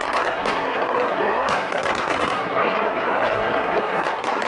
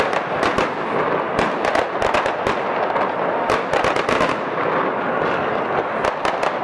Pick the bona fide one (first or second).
second